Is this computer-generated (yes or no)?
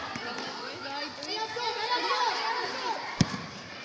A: no